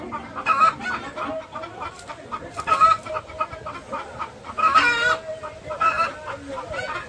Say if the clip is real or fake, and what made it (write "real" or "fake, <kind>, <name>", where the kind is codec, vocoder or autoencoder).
real